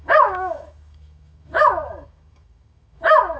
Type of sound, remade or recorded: remade